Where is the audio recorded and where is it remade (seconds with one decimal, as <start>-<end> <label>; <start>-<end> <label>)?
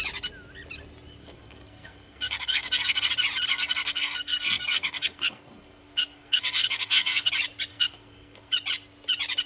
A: 0.0-1.2 recorded; 1.2-3.1 remade; 3.1-3.5 recorded; 3.5-7.3 remade; 7.3-7.7 recorded; 7.7-8.5 remade; 8.5-9.5 recorded